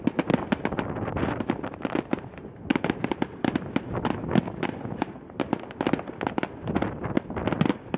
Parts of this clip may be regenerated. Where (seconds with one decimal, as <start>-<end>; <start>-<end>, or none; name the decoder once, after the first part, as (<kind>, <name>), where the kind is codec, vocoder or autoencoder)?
2.7-3.7 (vocoder, BigVGAN v2)